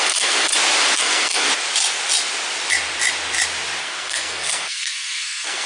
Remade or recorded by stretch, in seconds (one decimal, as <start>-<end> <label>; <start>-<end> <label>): 0.0-0.5 remade; 0.5-1.0 recorded; 1.0-1.5 remade; 1.5-3.8 recorded; 3.8-5.7 remade